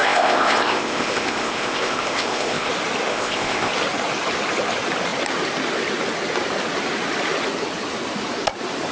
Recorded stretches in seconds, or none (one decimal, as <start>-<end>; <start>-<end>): 2.7-3.1; 3.7-8.9